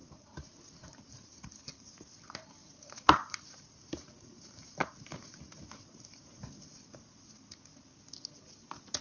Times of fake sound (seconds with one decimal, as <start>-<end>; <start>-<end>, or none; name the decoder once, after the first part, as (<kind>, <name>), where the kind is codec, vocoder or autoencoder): 0.0-1.5 (vocoder, BigVGAN v2); 2.6-7.6